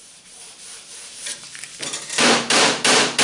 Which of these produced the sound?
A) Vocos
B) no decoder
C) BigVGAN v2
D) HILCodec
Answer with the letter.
C